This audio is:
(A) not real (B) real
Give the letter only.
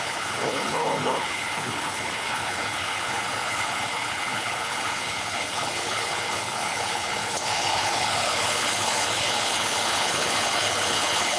A